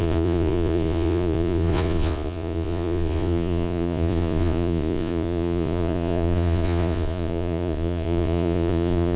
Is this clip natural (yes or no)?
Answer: no